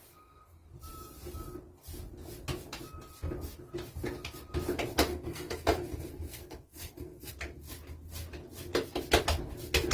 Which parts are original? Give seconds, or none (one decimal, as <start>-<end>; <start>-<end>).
0.0-5.1; 7.3-9.9